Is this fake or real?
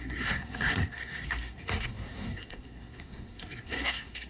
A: fake